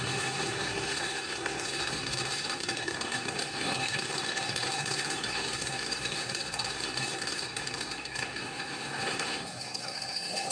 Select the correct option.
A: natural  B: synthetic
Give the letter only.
B